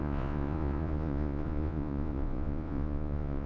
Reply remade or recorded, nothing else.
remade